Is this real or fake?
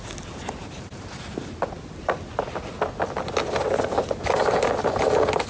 real